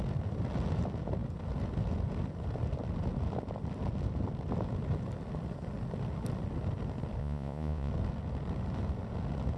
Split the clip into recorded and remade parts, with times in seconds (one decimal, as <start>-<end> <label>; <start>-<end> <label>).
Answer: 0.0-7.2 recorded; 7.2-7.9 remade; 7.9-9.6 recorded